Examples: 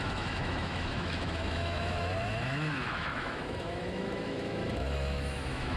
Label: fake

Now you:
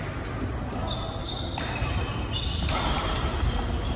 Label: real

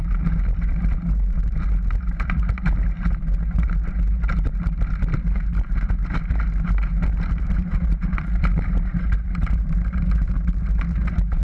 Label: fake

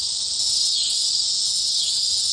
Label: real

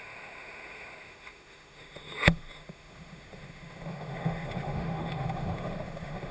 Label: fake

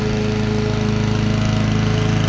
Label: real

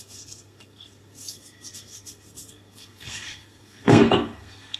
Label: fake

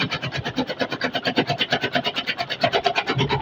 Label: real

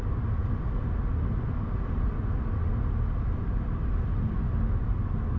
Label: real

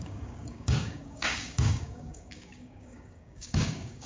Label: fake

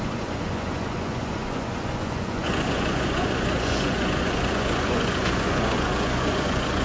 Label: fake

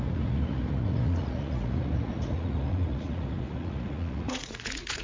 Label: fake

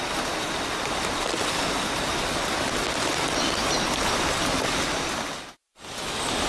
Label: real